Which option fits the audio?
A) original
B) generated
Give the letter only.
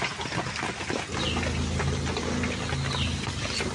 A